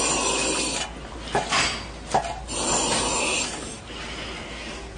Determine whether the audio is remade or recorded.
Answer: recorded